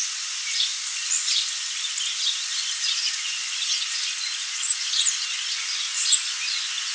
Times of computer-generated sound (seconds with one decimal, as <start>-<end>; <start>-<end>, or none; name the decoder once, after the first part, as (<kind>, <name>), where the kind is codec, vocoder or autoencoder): 0.0-0.7 (vocoder, Vocos); 2.9-6.9